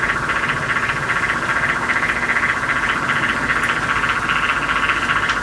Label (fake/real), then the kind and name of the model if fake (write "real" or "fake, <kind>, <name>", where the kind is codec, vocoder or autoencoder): real